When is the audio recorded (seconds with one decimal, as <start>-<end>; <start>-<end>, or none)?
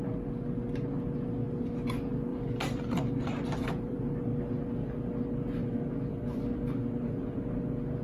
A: 0.0-2.3; 4.0-5.6; 7.4-8.0